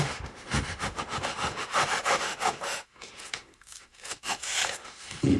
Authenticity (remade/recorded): remade